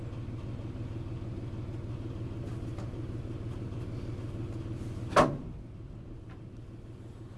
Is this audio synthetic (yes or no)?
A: no